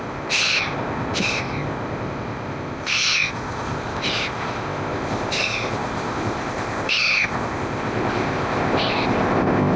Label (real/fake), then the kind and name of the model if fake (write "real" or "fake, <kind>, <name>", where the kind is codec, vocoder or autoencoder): fake, codec, ZipCodec